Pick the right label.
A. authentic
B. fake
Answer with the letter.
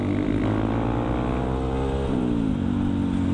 A